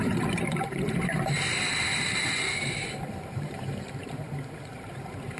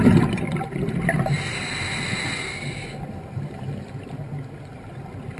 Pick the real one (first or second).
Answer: second